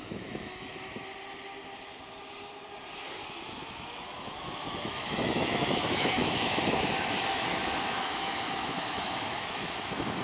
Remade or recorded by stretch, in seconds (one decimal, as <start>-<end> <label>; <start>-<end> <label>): 0.0-0.7 remade; 0.7-3.5 recorded; 3.5-10.2 remade

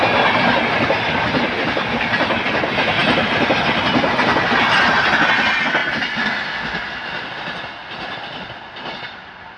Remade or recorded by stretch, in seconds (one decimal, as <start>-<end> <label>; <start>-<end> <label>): 0.0-9.6 recorded

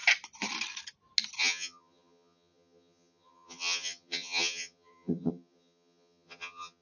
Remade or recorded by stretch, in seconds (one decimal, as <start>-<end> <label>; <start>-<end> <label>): 0.0-1.4 recorded; 1.4-6.8 remade

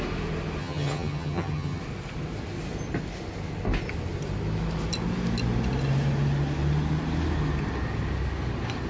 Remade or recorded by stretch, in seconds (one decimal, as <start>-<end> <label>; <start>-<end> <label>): 0.0-0.6 recorded; 0.6-1.8 remade; 1.8-8.9 recorded

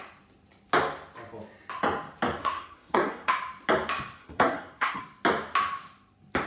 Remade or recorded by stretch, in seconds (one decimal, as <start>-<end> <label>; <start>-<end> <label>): 0.0-2.4 recorded; 2.4-3.3 remade; 3.3-4.2 recorded; 4.2-5.0 remade; 5.0-6.5 recorded

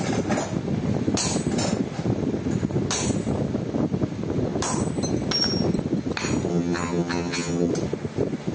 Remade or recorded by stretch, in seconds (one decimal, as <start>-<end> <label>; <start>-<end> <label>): 0.0-6.5 recorded; 6.5-7.7 remade; 7.7-8.5 recorded

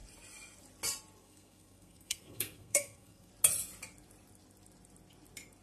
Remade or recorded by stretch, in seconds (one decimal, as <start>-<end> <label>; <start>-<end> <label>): 0.0-1.2 recorded; 1.2-3.3 remade; 3.3-5.6 recorded